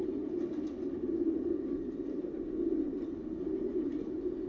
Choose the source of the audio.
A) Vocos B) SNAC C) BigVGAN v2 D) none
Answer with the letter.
D